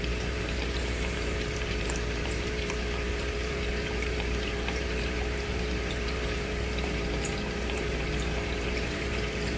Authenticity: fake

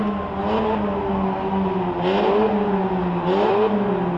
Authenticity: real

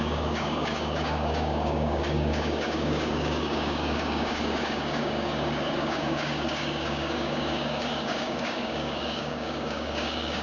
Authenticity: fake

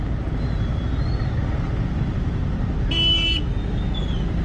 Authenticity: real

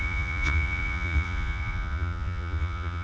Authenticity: fake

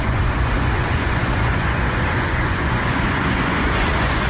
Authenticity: fake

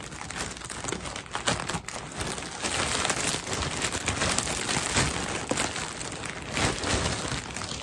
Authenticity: real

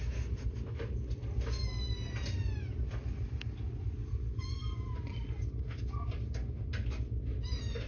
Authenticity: real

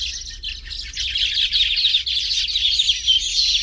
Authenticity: real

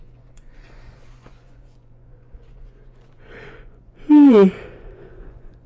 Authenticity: fake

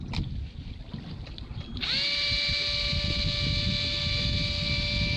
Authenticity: real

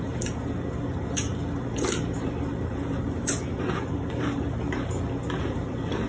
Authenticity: fake